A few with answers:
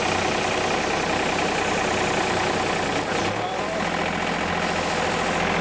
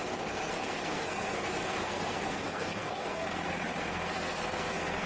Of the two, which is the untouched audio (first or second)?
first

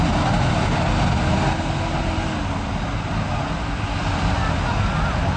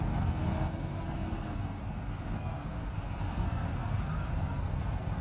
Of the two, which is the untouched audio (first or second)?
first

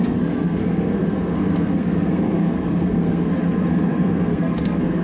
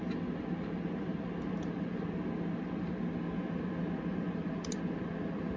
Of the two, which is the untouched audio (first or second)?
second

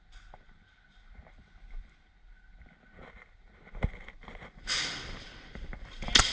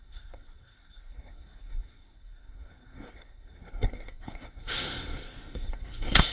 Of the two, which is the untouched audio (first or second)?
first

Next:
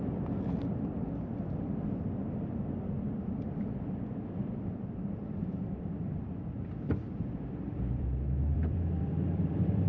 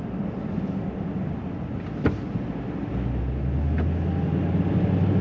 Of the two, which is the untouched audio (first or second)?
second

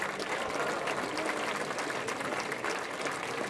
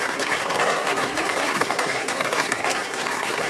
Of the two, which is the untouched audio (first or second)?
first